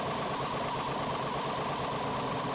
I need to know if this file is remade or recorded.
recorded